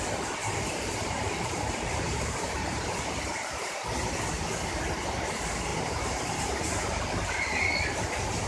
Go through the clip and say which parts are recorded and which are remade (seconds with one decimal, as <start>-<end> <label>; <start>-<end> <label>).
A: 0.0-0.4 recorded; 0.4-3.0 remade; 3.0-5.7 recorded; 5.7-6.6 remade; 6.6-8.5 recorded